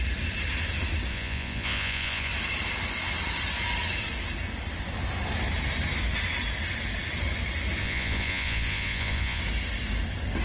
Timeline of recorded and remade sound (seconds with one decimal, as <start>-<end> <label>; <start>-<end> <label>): 0.0-1.1 recorded; 1.1-2.3 remade; 2.3-7.8 recorded; 7.8-9.4 remade; 9.4-10.4 recorded